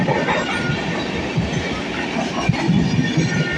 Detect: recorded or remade recorded